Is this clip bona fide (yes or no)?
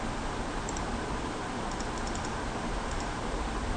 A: yes